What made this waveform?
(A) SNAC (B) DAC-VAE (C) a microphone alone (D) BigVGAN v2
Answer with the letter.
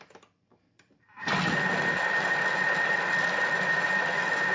C